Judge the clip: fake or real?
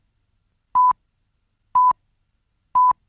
real